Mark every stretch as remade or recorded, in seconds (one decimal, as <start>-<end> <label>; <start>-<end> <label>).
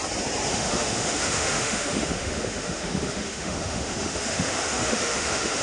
0.0-0.5 recorded; 0.5-5.6 remade